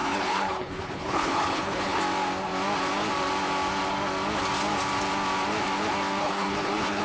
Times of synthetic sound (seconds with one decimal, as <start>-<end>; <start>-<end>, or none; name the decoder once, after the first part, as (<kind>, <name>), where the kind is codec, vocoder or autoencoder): 0.0-2.0 (codec, HILCodec); 6.2-7.0